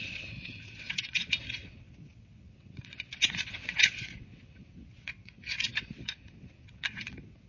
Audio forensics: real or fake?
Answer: fake